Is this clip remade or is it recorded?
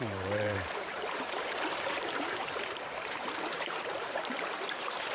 remade